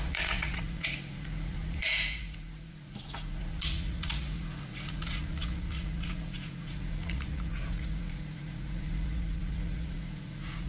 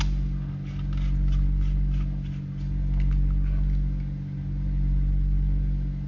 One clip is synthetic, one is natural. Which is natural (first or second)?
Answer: second